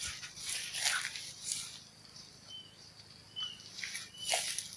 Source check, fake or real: real